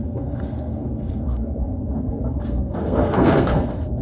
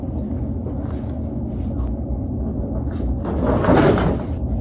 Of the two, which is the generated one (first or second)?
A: first